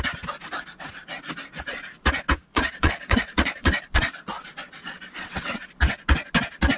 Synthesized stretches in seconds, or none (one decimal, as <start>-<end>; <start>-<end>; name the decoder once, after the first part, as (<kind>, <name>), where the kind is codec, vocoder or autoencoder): 2.5-5.7 (vocoder, Vocos)